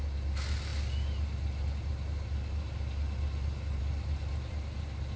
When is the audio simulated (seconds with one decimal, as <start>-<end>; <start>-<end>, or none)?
none